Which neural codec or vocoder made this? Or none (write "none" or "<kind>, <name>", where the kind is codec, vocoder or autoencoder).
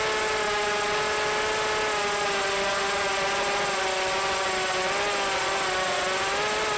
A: none